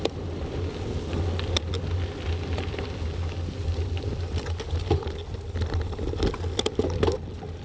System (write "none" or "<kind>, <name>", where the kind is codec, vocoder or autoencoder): none